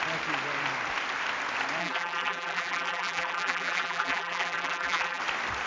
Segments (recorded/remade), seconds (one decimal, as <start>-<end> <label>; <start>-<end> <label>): 0.0-1.8 recorded; 1.8-5.2 remade; 5.2-5.7 recorded